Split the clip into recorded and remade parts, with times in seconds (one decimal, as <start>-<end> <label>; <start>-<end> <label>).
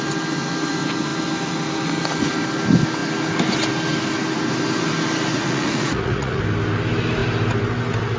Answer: 0.0-5.3 recorded; 5.3-6.4 remade; 6.4-8.2 recorded